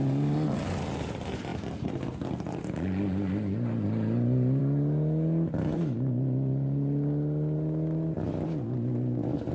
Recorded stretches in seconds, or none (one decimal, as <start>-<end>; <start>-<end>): 0.0-9.5